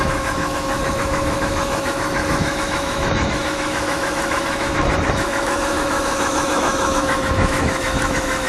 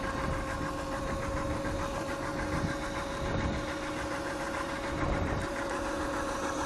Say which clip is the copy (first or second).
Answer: first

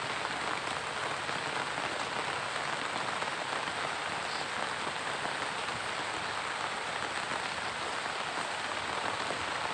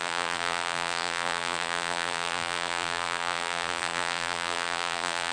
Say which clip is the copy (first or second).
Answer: second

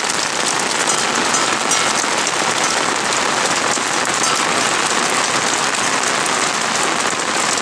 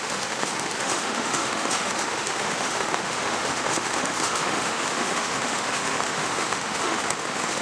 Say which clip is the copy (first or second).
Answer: second